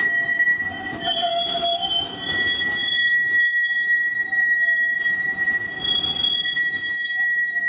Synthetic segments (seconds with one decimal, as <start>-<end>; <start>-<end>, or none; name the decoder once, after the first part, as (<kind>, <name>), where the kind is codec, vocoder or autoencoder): none